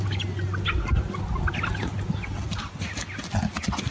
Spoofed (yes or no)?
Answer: no